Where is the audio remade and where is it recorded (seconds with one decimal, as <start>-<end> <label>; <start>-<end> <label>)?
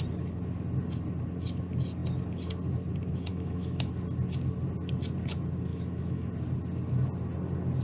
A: 0.0-3.3 recorded; 3.3-3.9 remade; 3.9-5.7 recorded; 5.7-6.3 remade; 6.3-7.8 recorded